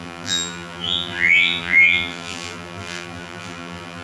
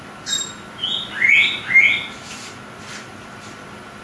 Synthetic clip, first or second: first